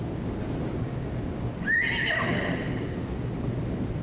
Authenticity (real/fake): real